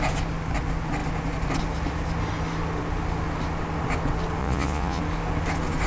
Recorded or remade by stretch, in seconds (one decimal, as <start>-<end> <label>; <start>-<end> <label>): 0.0-4.4 recorded; 4.4-5.0 remade; 5.0-5.9 recorded